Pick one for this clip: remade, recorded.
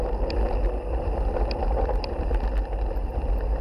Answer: recorded